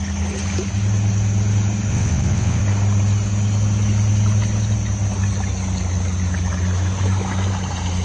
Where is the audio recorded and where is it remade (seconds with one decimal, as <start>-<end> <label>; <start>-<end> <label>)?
0.0-1.9 recorded; 1.9-2.6 remade; 2.6-8.0 recorded